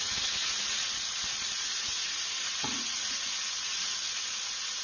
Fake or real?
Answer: fake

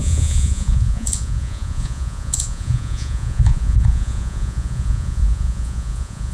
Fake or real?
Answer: fake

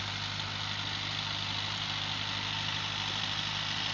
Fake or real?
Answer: real